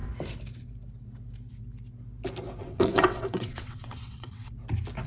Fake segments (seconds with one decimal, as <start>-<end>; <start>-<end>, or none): 2.6-4.5